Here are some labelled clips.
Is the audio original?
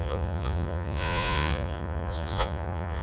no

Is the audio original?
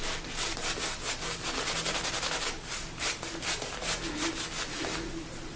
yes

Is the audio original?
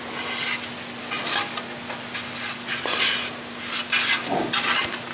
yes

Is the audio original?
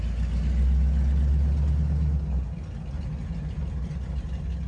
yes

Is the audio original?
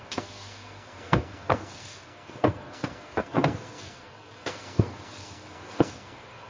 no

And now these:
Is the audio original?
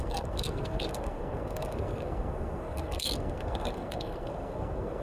no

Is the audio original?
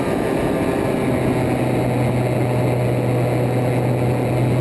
yes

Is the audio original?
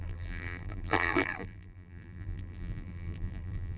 no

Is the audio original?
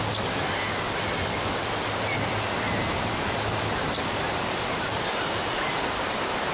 yes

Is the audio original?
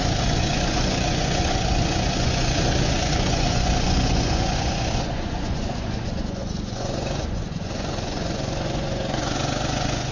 no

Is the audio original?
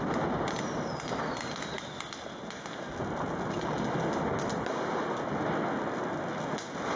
yes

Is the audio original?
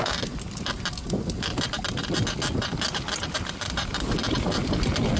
yes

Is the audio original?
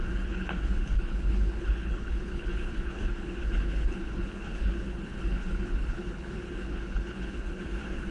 no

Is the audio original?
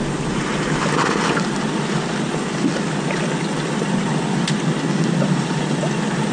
yes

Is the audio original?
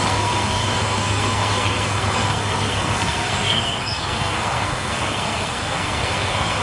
no